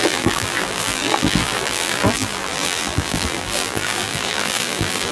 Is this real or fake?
fake